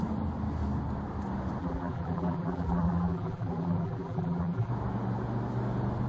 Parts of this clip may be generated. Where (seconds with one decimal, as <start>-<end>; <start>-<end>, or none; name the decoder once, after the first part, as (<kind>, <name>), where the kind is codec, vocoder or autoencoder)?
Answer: 1.6-4.7 (vocoder, BigVGAN v2)